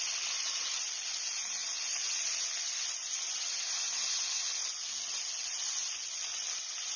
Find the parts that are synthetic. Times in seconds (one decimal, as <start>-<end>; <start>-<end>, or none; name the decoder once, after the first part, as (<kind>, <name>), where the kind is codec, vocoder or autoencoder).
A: none